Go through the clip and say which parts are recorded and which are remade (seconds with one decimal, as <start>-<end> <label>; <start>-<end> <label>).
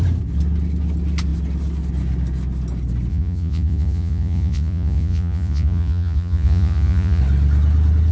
0.0-3.1 recorded; 3.1-7.2 remade; 7.2-8.1 recorded